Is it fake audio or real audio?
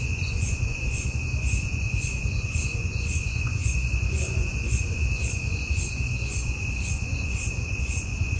fake